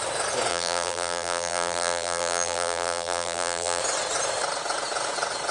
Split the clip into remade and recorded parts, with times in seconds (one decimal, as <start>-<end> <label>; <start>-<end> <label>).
0.0-0.5 recorded; 0.5-3.8 remade; 3.8-5.5 recorded